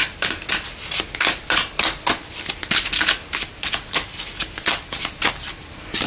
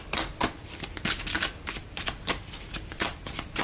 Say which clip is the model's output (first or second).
second